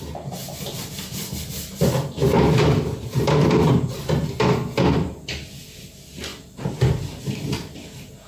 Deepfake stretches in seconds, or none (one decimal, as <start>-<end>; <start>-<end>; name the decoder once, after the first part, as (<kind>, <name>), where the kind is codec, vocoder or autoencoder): none